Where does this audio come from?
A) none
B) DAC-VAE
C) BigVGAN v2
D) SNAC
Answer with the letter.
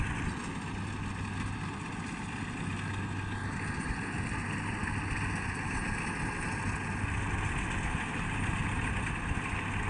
A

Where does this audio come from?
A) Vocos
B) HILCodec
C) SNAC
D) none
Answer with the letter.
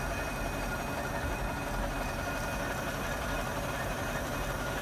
D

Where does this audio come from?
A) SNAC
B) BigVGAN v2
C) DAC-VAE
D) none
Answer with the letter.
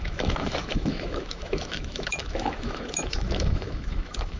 C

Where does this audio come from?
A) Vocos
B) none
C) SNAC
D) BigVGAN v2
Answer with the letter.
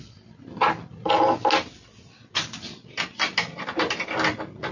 B